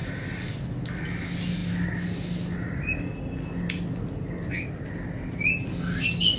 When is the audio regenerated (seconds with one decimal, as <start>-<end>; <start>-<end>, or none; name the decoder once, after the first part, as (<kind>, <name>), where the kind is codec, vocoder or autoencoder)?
none